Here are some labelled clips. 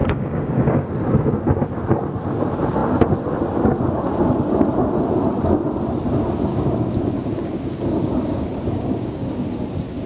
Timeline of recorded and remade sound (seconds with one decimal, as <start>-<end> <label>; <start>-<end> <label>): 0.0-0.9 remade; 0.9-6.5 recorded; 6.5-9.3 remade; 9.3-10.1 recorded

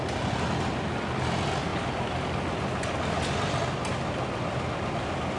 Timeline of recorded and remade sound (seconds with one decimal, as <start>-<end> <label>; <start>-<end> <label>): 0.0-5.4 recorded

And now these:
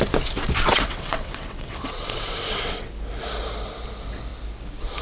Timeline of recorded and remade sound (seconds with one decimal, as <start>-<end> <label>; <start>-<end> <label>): 0.0-0.7 recorded; 0.7-2.9 remade; 2.9-5.0 recorded

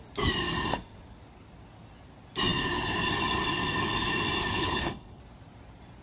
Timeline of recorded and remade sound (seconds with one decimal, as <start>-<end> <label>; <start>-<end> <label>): 0.0-4.5 recorded; 4.5-5.2 remade; 5.2-6.0 recorded